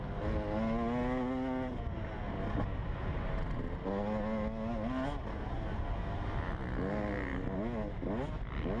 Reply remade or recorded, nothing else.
recorded